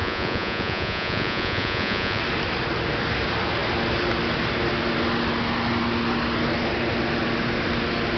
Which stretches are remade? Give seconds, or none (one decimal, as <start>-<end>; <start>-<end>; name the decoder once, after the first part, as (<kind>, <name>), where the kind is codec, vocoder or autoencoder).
0.0-2.2 (vocoder, Vocos)